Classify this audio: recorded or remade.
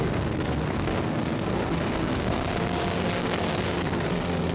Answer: remade